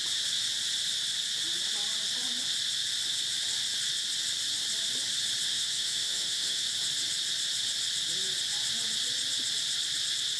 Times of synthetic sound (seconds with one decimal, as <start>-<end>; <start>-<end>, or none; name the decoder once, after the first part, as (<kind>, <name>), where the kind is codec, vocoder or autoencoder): 5.5-6.6 (autoencoder, DAC-VAE)